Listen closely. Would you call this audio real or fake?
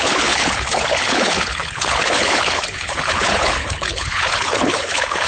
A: fake